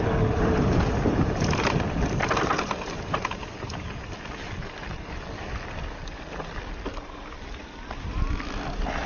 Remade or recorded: recorded